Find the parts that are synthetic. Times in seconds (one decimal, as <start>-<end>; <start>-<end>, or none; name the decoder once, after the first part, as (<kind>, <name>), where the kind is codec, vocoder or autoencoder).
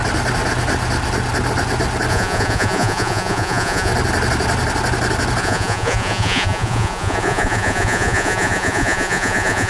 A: 2.1-3.9 (vocoder, Vocos); 5.4-9.7